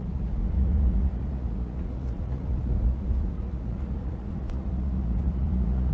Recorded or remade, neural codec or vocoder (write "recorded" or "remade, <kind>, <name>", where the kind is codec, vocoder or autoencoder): remade, vocoder, Vocos